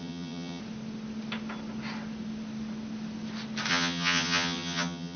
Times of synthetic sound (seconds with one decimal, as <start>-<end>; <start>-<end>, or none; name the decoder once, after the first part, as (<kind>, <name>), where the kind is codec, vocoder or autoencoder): 0.0-0.6 (vocoder, HiFi-GAN); 3.7-5.2